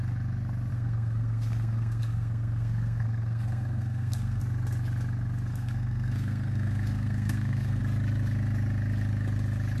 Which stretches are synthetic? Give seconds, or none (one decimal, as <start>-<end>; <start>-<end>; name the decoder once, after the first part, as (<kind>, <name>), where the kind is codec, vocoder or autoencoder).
0.7-4.4 (codec, SNAC); 5.5-7.8